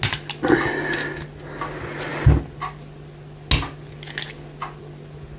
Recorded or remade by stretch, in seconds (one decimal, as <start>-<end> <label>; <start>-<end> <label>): 0.0-5.4 recorded